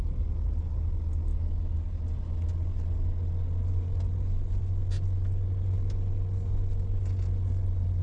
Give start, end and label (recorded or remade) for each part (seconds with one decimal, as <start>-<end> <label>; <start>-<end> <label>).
0.0-8.0 recorded